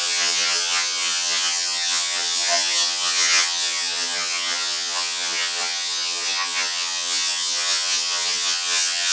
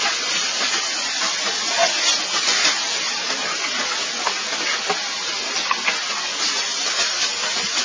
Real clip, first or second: second